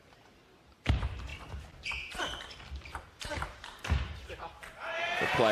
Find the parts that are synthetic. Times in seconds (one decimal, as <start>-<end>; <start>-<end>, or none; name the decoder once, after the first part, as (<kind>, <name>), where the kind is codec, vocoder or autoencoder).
none